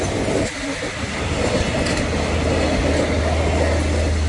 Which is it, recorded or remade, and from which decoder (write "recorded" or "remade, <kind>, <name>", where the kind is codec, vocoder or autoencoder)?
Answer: recorded